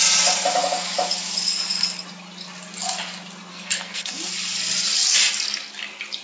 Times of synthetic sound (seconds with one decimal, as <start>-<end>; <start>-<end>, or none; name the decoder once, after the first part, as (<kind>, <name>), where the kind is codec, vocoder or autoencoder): 3.5-4.3 (codec, SNAC)